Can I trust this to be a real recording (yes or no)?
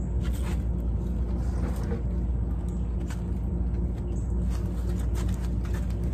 yes